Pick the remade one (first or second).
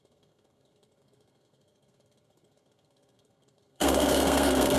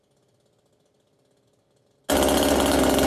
first